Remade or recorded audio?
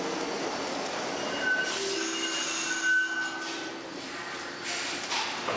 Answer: recorded